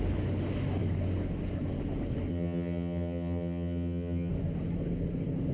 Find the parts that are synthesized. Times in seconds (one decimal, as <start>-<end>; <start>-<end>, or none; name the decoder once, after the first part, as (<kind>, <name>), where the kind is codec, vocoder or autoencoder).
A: 2.3-4.3 (vocoder, HiFi-GAN)